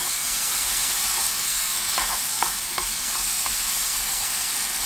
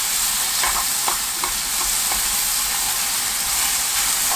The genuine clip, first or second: second